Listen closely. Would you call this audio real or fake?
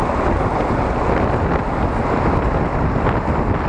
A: real